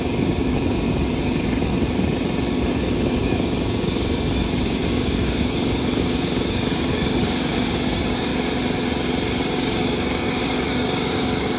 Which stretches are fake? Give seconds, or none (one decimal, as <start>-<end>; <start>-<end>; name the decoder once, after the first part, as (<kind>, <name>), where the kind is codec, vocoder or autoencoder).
0.0-1.7 (codec, DAC); 2.5-8.3; 9.4-11.6